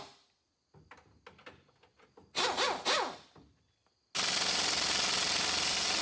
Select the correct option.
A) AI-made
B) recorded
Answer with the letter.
B